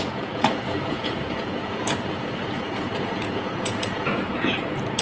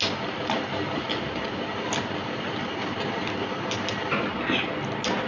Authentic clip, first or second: second